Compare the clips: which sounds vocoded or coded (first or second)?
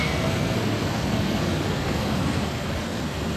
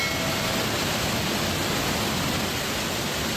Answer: first